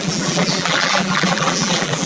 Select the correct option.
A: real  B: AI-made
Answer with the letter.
B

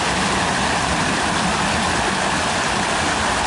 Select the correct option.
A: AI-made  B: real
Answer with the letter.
B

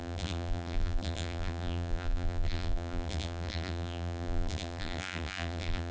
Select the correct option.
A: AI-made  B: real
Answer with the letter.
A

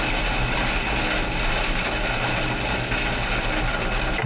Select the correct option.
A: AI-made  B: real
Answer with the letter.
B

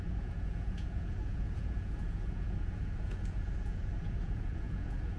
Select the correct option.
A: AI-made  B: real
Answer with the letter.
A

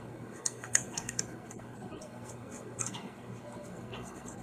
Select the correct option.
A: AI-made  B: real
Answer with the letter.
A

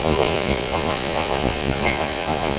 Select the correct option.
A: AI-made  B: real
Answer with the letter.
A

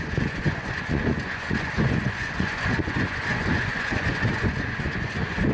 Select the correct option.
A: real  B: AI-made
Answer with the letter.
B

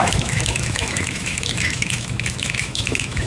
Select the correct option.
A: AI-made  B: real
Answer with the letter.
A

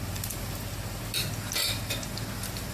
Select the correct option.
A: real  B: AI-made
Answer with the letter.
A